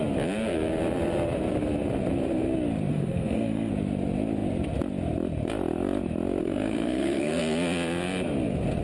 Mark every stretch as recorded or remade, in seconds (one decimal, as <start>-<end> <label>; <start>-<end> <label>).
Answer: 0.0-2.9 recorded; 2.9-3.7 remade; 3.7-6.4 recorded; 6.4-7.4 remade; 7.4-8.8 recorded

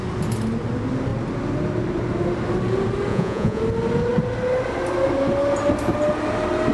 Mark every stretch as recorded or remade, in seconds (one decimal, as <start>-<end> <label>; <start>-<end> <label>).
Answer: 0.0-3.1 recorded; 3.1-3.6 remade; 3.6-6.7 recorded

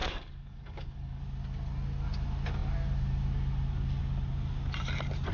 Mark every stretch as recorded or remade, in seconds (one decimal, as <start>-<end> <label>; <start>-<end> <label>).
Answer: 0.0-1.2 remade; 1.2-5.3 recorded

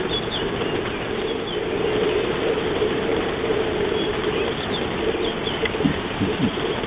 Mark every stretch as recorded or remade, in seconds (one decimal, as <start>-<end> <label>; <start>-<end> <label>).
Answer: 0.0-6.9 recorded

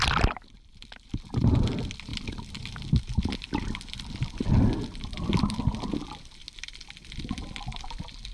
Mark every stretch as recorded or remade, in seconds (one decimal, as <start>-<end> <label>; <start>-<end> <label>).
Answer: 0.0-8.3 recorded

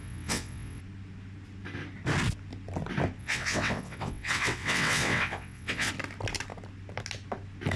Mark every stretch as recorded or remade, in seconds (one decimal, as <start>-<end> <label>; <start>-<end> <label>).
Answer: 0.0-0.8 remade; 0.8-3.2 recorded; 3.2-5.9 remade; 5.9-7.8 recorded

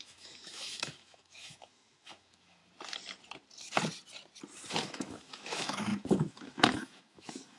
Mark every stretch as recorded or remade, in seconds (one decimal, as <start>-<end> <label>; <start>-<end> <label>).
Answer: 0.0-2.6 remade; 2.6-4.7 recorded; 4.7-7.6 remade